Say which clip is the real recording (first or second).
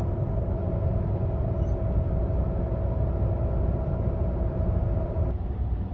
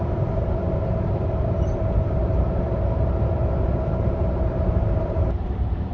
first